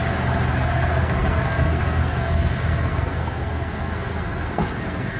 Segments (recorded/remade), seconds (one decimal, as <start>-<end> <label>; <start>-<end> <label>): 0.0-0.5 recorded; 0.5-5.2 remade